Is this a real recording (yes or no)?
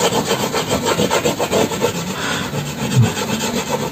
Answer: yes